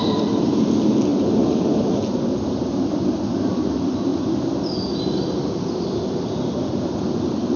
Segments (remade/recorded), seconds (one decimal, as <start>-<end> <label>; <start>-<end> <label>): 0.0-7.6 recorded